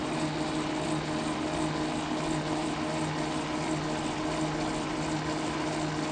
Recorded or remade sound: recorded